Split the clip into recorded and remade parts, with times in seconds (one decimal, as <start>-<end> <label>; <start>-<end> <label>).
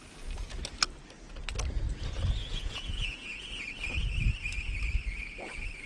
0.0-2.4 recorded; 2.4-3.5 remade; 3.5-5.9 recorded